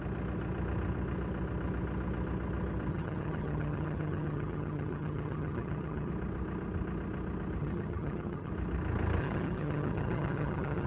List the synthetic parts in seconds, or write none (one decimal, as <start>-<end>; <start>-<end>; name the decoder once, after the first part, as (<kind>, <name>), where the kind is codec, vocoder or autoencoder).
2.9-6.1 (vocoder, HiFi-GAN); 7.6-8.5; 9.2-10.9